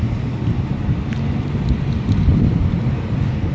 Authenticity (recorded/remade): recorded